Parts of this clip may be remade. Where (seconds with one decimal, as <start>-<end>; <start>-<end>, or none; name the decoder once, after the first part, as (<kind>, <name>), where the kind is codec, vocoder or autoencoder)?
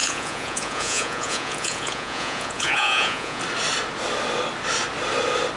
0.0-3.4 (vocoder, Vocos)